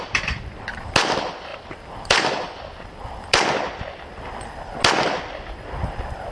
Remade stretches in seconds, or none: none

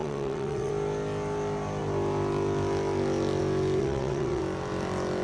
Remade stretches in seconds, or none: 0.0-0.7; 3.8-4.4

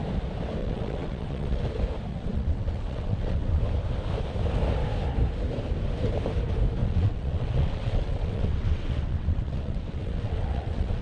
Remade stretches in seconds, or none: 0.6-1.6; 2.1-3.6; 6.8-11.0

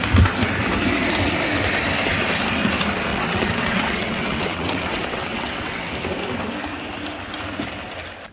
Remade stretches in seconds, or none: 3.1-5.9

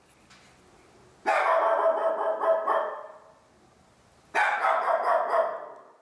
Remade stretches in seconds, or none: none

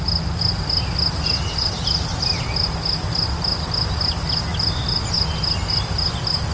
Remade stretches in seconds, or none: none